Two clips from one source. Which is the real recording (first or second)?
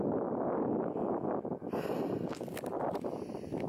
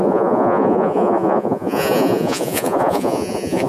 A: first